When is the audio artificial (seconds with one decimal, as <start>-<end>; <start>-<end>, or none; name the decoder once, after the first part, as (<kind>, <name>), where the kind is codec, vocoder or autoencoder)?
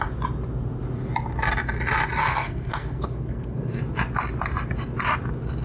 2.2-3.8 (codec, SNAC)